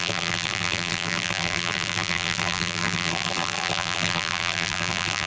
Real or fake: fake